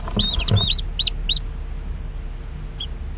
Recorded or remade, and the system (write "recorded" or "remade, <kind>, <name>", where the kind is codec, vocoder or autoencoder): recorded